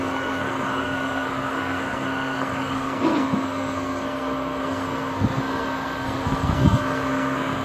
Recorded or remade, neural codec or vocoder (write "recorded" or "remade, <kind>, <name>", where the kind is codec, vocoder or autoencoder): remade, codec, SNAC